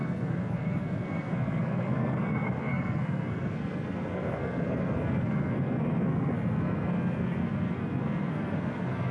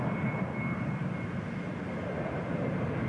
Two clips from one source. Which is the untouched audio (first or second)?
second